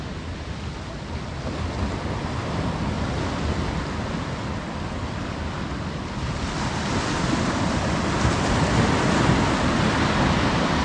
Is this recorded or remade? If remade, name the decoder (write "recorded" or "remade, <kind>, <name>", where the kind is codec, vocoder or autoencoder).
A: recorded